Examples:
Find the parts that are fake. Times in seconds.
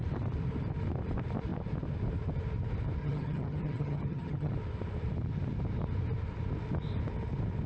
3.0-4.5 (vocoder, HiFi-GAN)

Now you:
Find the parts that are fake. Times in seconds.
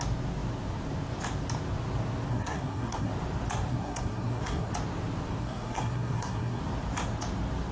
2.3-3.1 (codec, SNAC); 3.7-4.7; 5.4-6.6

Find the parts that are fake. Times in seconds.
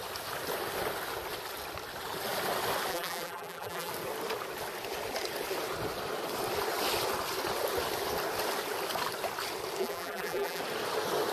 2.9-3.9 (vocoder, BigVGAN v2); 9.8-10.6